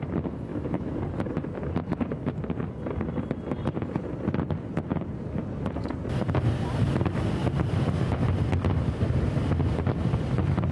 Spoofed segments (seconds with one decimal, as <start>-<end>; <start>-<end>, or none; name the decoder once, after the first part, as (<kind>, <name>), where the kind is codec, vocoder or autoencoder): 0.5-1.0 (autoencoder, DAC-VAE)